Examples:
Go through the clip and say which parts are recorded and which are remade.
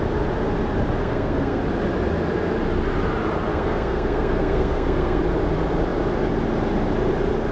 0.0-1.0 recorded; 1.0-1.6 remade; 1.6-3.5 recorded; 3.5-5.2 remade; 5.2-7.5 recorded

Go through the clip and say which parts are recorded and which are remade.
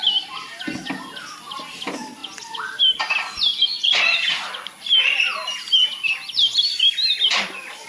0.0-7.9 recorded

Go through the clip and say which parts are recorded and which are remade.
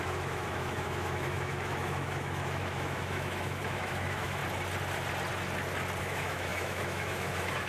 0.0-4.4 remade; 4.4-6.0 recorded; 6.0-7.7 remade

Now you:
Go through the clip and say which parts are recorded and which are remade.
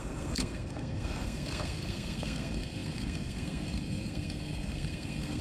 0.0-5.4 remade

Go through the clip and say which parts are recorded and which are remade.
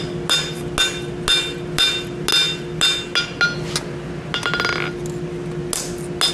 0.0-6.3 recorded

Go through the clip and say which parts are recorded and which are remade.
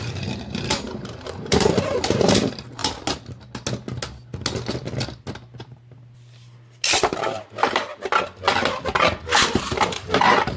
0.0-2.8 remade; 2.8-7.1 recorded; 7.1-7.9 remade; 7.9-9.5 recorded; 9.5-10.6 remade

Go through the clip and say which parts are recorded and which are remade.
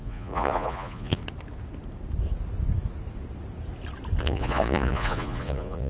0.0-1.2 remade; 1.2-4.2 recorded; 4.2-5.9 remade